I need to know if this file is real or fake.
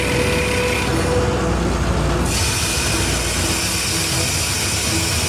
real